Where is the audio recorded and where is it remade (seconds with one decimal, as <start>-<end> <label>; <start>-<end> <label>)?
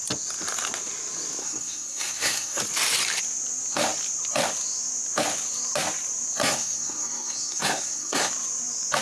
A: 0.0-1.4 recorded; 1.4-2.6 remade; 2.6-6.4 recorded; 6.4-8.3 remade; 8.3-9.0 recorded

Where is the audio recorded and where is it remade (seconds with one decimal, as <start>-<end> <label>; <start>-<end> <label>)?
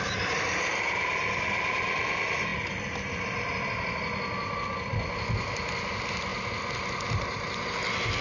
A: 0.0-8.2 recorded